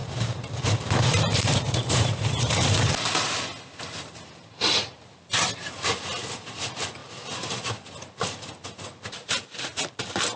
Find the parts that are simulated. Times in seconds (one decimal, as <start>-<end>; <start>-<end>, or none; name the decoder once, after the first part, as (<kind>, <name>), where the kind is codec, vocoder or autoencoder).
0.0-2.9 (vocoder, BigVGAN v2)